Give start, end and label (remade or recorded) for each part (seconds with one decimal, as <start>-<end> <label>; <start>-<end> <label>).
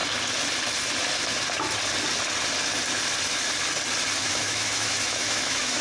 0.0-4.2 recorded; 4.2-5.8 remade